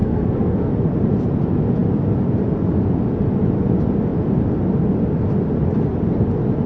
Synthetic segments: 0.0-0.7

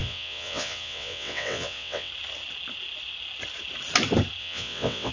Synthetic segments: 0.0-2.1; 4.4-5.1

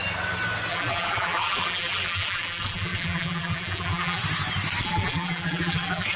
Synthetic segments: 0.7-4.2; 4.8-6.2

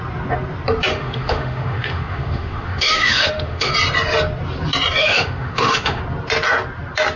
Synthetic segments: 0.9-3.7; 5.0-6.0

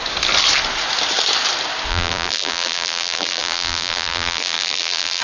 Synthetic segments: 1.9-5.2

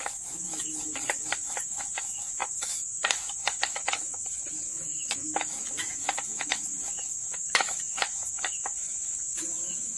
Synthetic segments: 0.0-10.0